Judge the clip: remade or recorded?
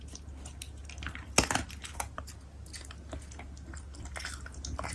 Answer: recorded